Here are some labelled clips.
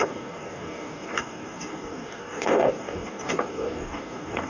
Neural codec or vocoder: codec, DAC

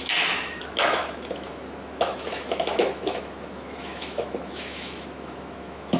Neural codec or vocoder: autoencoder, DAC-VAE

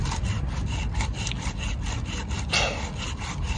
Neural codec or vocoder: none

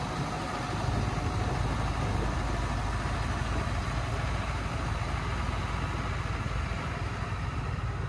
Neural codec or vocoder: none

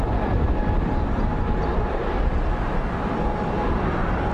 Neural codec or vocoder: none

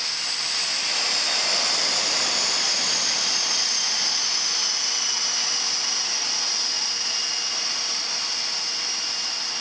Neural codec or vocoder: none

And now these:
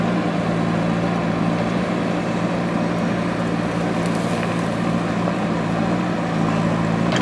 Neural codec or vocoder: none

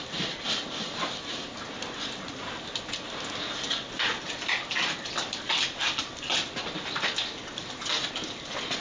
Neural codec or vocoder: none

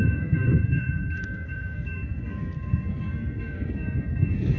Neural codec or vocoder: codec, SNAC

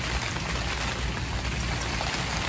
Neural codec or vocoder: none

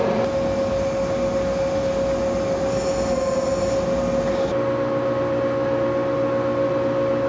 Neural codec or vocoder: none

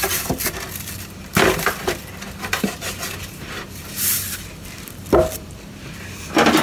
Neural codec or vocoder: vocoder, BigVGAN v2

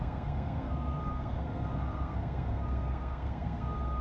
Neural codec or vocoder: codec, SNAC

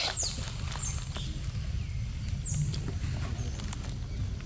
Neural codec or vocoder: none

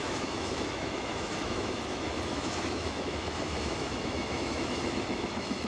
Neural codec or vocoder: autoencoder, DAC-VAE